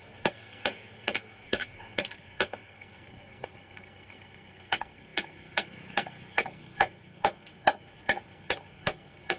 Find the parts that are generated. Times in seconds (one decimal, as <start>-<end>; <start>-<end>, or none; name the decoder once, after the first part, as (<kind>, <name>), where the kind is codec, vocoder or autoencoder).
0.0-9.4 (codec, SNAC)